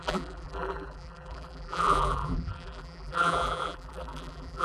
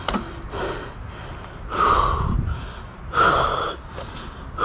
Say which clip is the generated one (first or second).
first